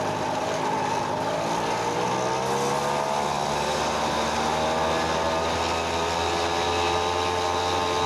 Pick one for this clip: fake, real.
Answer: real